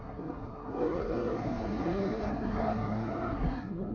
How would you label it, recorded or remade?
remade